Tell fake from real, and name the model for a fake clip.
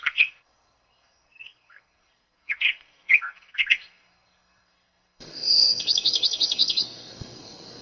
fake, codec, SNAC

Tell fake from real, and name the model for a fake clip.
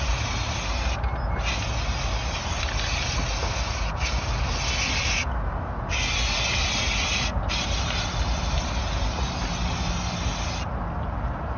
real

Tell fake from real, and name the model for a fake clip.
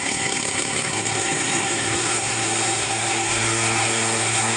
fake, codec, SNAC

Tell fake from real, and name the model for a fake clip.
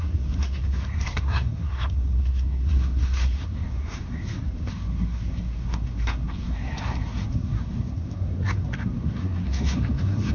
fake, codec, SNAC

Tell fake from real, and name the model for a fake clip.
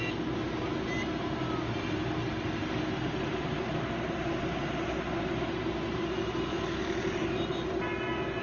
real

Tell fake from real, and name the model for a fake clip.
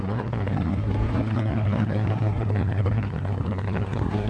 fake, codec, SNAC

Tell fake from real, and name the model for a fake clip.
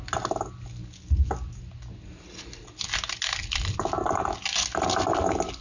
real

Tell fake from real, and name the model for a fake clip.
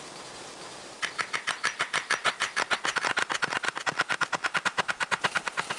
real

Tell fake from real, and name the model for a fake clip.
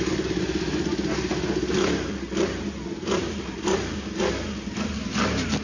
real